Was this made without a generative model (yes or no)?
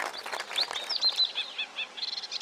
yes